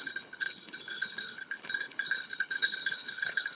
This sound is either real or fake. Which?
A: fake